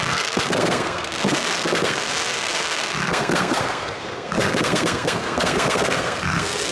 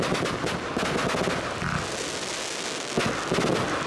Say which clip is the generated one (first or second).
first